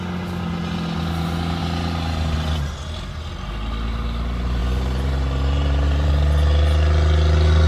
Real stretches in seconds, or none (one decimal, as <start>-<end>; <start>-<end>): 0.0-4.6; 6.1-7.7